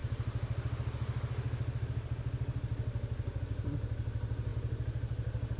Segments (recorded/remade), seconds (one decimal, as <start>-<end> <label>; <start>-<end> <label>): 0.0-5.6 recorded